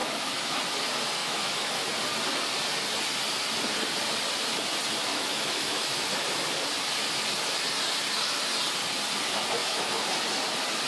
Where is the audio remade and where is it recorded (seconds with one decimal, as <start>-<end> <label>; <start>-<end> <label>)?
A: 0.0-0.6 remade; 0.6-1.2 recorded; 1.2-1.7 remade; 1.7-5.1 recorded; 5.1-6.1 remade; 6.1-9.6 recorded; 9.6-10.1 remade; 10.1-10.9 recorded